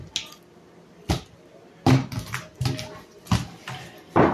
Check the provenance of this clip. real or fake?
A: real